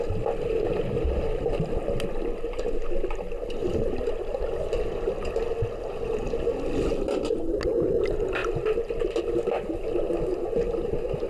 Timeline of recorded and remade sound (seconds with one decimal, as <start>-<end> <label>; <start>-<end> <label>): 0.0-11.3 recorded